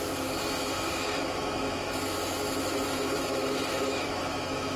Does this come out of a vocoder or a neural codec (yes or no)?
yes